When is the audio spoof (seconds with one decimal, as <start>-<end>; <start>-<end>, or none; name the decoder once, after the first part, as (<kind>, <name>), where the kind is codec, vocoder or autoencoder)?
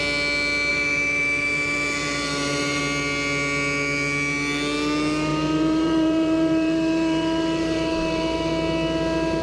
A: 0.7-2.8 (vocoder, BigVGAN v2); 5.3-8.5